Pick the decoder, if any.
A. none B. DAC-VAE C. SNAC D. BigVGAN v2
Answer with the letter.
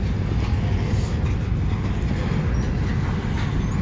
A